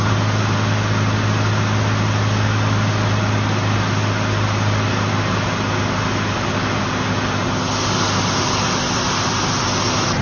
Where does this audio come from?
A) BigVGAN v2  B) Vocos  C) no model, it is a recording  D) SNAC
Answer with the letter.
C